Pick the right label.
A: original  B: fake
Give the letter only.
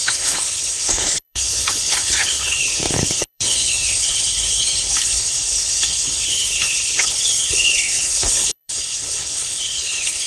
B